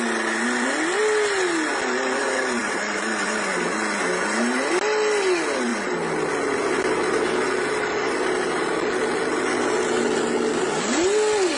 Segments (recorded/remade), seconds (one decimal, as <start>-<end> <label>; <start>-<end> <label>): 0.0-11.6 recorded